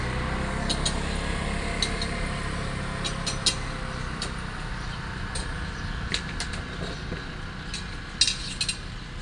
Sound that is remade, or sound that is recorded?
recorded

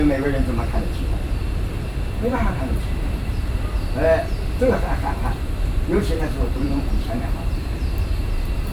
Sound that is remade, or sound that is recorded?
remade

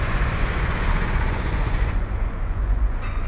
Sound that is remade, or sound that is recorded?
remade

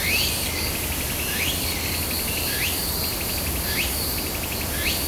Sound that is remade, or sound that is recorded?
recorded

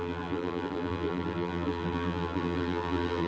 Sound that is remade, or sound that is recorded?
remade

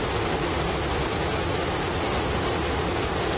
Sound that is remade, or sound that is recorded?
recorded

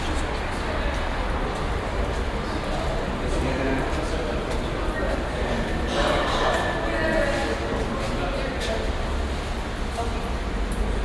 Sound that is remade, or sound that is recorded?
recorded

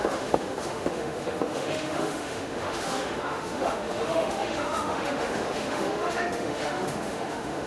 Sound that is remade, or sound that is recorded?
remade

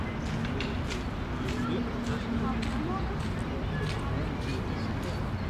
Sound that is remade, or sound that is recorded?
recorded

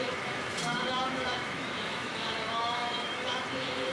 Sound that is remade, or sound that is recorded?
remade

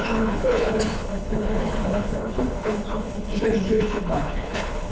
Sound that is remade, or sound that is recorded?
remade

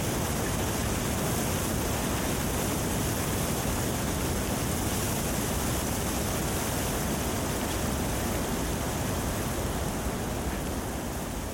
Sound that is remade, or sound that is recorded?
recorded